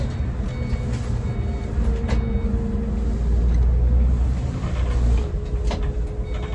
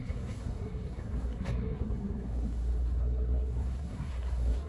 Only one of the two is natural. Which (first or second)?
first